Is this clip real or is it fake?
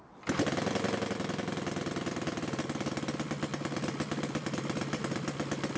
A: real